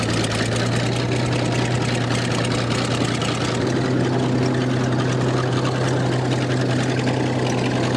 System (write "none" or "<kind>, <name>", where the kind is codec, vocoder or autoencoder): none